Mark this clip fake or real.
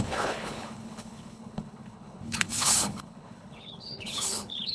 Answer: fake